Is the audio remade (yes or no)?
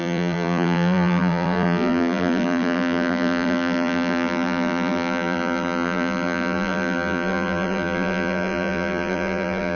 yes